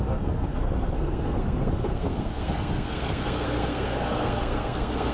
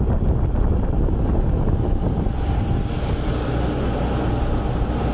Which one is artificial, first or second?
first